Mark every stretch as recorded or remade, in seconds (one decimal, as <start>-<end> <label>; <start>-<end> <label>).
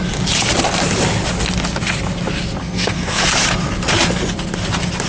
0.0-2.6 recorded; 2.6-3.2 remade; 3.2-5.1 recorded